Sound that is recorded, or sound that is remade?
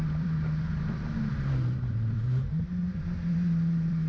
remade